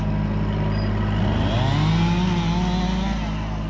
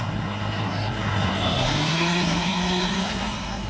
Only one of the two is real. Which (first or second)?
first